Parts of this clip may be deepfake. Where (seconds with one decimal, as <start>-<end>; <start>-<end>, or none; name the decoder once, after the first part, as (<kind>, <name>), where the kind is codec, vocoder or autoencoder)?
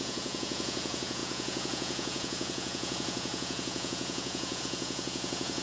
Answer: 0.0-5.6 (vocoder, Vocos)